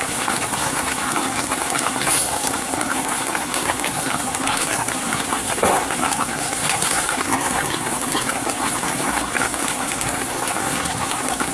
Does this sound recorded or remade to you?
remade